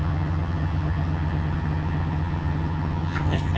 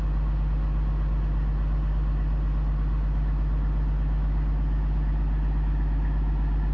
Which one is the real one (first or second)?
second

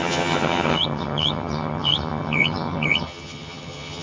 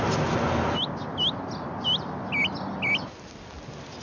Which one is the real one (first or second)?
second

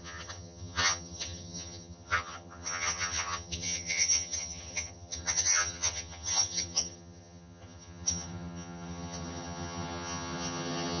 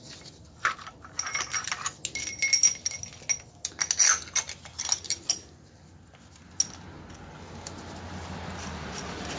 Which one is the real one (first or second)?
second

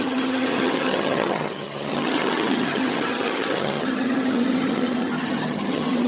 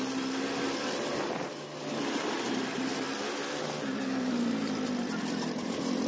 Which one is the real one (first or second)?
second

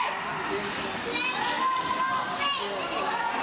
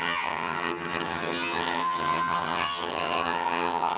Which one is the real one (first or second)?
first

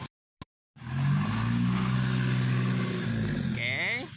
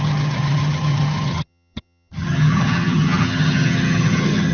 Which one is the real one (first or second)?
first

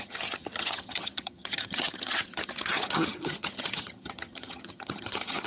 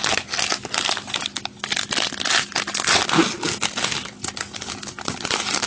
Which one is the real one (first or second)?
second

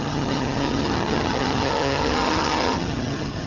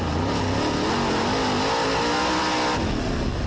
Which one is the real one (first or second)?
second